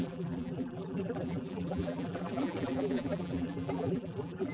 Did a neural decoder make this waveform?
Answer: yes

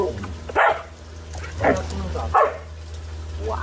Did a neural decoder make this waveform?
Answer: no